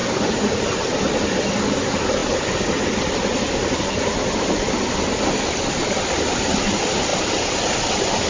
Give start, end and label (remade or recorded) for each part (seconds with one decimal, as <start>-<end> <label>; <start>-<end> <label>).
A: 0.0-8.3 recorded